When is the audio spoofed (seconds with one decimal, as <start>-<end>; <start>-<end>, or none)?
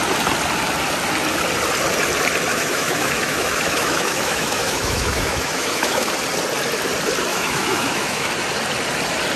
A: 2.5-6.1; 7.3-8.3